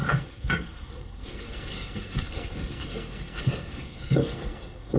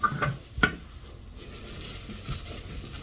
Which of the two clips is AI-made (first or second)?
first